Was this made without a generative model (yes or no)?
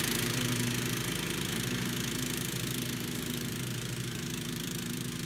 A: no